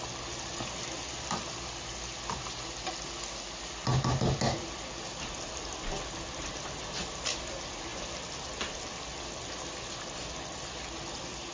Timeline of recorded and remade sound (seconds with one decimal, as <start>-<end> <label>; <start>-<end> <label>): 0.0-11.5 recorded